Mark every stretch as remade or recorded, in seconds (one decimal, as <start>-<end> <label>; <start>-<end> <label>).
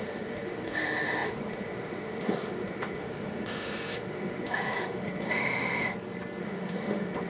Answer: 0.0-5.9 remade; 5.9-6.4 recorded; 6.4-7.3 remade